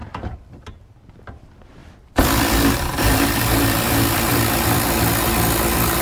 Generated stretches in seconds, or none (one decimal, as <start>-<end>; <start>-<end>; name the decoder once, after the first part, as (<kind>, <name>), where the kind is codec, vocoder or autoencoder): 0.0-0.6 (vocoder, BigVGAN v2); 1.8-4.8